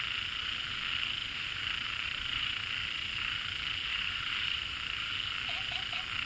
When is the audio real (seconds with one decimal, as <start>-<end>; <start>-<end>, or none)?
0.0-1.2; 2.5-3.9; 5.1-6.3